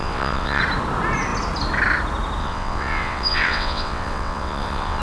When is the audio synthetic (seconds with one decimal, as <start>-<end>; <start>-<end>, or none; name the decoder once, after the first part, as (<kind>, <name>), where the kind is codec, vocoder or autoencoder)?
0.0-0.6 (vocoder, WaveNeXt); 2.4-5.0